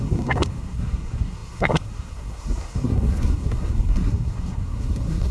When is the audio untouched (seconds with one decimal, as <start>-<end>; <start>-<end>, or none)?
none